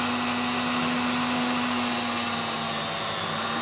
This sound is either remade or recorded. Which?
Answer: recorded